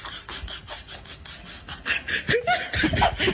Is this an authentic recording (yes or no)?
yes